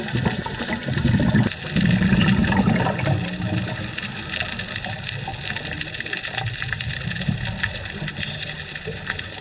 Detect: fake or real real